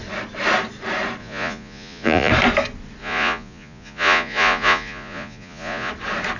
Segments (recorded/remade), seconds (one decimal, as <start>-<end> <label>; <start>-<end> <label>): 0.0-1.2 recorded; 1.2-2.3 remade; 2.3-3.0 recorded; 3.0-5.9 remade; 5.9-6.4 recorded